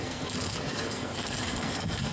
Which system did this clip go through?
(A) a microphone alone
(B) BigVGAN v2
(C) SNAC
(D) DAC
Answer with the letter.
C